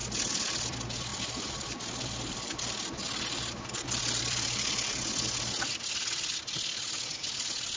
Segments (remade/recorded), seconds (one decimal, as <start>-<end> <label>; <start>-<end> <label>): 0.0-1.1 recorded; 1.1-5.8 remade; 5.8-7.8 recorded